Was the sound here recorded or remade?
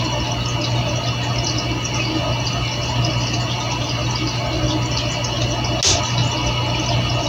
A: recorded